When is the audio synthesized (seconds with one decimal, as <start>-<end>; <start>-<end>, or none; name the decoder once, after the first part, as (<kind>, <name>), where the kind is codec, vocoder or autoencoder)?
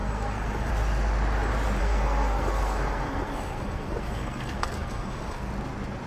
0.0-0.7 (codec, SNAC); 1.8-5.5